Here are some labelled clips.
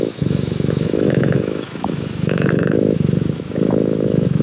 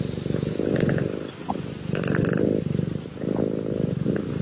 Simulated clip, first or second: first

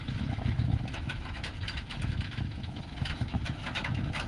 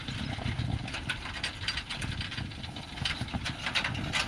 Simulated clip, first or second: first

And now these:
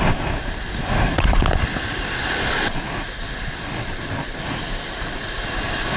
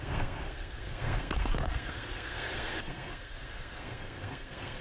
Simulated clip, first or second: second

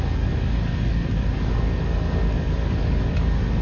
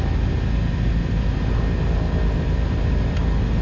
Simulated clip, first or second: first